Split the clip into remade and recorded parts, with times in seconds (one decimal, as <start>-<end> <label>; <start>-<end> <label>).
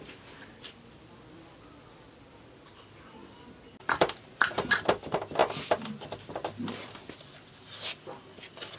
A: 0.0-8.8 recorded